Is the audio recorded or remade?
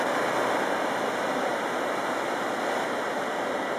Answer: recorded